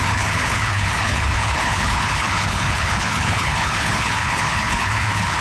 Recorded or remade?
remade